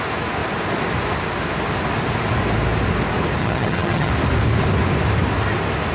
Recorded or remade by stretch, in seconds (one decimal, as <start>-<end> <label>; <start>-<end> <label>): 0.0-3.4 recorded; 3.4-4.1 remade; 4.1-5.9 recorded